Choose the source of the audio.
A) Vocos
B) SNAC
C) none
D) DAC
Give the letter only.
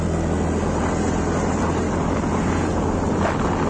C